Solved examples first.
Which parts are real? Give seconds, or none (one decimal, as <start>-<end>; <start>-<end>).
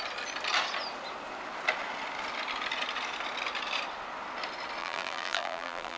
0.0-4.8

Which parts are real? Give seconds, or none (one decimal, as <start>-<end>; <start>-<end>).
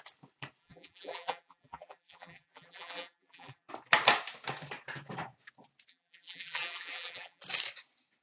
0.0-0.6; 3.7-5.9; 7.4-8.2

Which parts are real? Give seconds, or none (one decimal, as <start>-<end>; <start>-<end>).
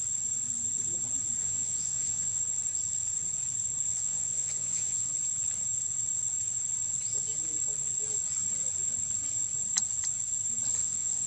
0.0-1.4; 2.4-3.9; 5.1-10.8